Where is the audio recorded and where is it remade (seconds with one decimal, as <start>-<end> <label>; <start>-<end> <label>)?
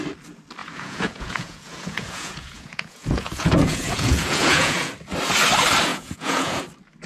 0.0-0.6 recorded; 0.6-4.9 remade; 4.9-5.9 recorded; 5.9-6.6 remade; 6.6-7.1 recorded